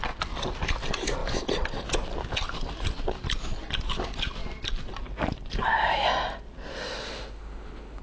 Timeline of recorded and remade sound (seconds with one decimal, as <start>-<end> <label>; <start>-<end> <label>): 0.0-6.7 recorded; 6.7-8.0 remade